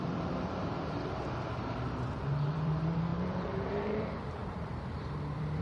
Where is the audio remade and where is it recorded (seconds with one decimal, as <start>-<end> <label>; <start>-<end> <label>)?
0.0-5.6 remade